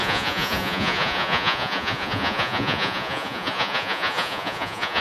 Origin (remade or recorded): remade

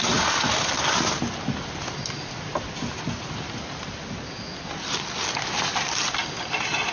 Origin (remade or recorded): recorded